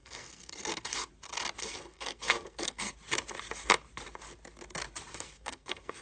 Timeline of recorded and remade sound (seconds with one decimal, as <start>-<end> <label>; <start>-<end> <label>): 0.0-1.1 remade; 1.1-1.6 recorded; 1.6-2.9 remade; 2.9-5.1 recorded; 5.1-6.0 remade